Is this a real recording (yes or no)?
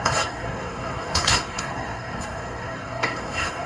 no